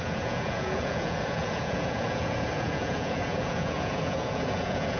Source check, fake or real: fake